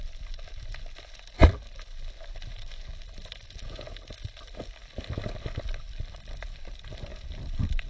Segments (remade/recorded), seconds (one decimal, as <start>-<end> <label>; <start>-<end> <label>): 0.0-7.9 recorded